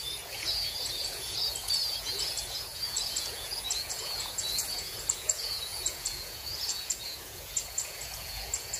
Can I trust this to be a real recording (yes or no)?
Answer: no